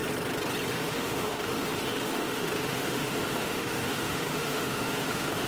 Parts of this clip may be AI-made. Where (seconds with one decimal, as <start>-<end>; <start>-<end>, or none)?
0.7-5.5